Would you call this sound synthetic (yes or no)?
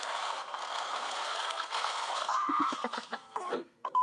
yes